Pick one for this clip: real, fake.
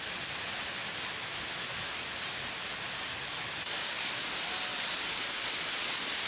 real